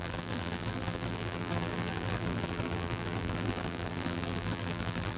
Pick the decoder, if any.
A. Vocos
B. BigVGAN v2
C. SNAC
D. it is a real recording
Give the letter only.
B